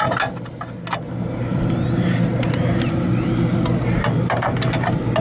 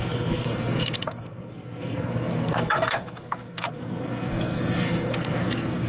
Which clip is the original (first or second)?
first